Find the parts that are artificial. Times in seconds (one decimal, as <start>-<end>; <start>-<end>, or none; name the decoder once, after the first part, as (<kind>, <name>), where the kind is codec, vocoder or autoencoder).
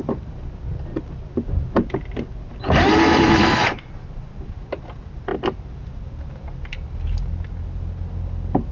3.4-3.9 (autoencoder, DAC-VAE)